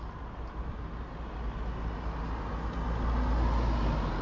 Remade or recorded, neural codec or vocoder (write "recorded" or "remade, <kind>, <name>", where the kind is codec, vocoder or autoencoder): recorded